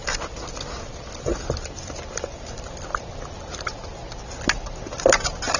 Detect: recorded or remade recorded